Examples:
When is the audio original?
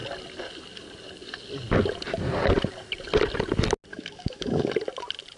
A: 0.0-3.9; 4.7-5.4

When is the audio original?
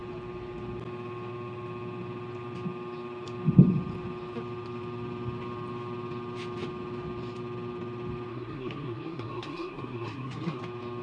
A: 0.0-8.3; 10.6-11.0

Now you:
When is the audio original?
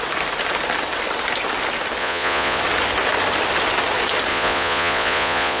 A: 0.0-2.0; 2.6-4.3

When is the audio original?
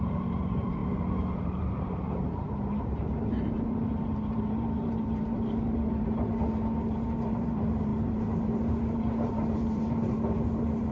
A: 0.8-1.4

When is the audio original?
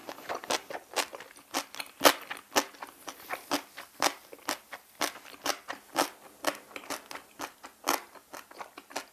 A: 0.0-9.1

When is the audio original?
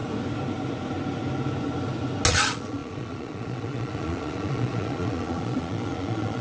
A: 0.0-2.3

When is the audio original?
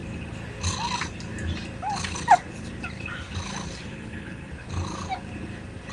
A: 0.0-3.8; 4.5-5.9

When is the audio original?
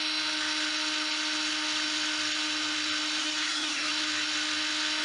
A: 0.0-3.2; 3.9-5.0